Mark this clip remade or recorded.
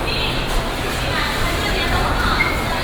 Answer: recorded